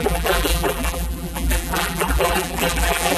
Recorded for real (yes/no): no